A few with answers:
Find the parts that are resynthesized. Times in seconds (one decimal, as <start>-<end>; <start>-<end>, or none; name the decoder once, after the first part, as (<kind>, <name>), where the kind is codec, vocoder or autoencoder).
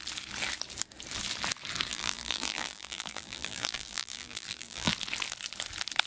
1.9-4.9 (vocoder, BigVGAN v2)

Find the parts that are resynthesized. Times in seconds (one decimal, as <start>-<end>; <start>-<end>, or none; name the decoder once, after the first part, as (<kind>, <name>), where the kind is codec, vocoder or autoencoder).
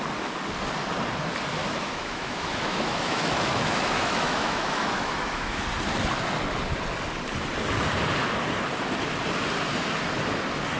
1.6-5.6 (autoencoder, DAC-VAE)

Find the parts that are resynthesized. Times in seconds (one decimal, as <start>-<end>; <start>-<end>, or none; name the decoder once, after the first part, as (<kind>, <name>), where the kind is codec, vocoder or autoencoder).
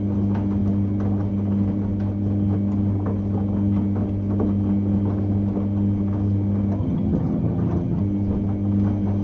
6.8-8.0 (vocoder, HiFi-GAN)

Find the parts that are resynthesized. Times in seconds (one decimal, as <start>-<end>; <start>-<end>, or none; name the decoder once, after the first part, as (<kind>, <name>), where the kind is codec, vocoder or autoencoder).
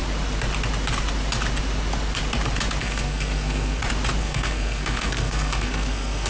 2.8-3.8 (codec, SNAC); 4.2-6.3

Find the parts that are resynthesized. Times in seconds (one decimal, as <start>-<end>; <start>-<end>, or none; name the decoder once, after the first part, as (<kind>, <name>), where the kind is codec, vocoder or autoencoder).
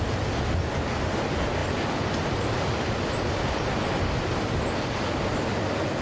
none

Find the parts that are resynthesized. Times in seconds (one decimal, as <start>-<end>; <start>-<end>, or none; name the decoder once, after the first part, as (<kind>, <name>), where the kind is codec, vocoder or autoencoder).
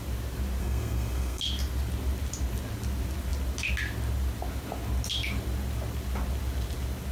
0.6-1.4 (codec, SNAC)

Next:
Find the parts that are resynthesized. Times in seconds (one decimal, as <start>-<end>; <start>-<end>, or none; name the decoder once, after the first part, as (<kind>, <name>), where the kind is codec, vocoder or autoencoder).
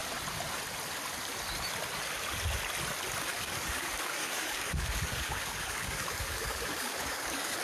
3.3-7.6 (codec, DAC)